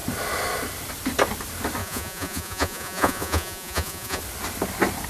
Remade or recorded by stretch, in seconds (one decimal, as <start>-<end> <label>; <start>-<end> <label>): 0.0-1.8 recorded; 1.8-4.2 remade; 4.2-5.1 recorded